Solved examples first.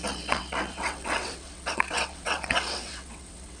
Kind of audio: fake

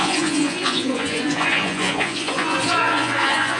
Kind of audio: fake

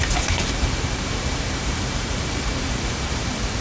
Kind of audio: fake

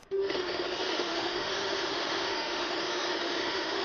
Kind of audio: fake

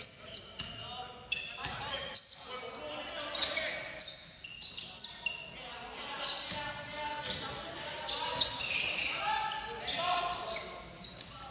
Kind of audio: real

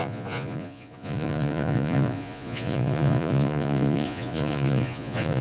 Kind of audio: fake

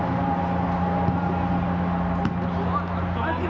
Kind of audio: real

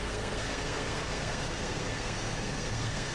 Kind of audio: fake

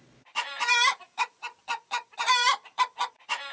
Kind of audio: fake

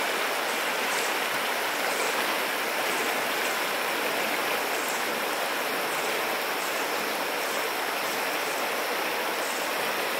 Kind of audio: real